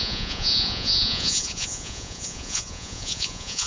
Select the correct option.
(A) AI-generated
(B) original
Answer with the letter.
A